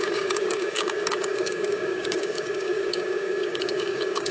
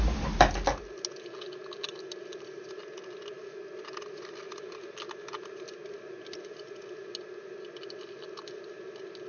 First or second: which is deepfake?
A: first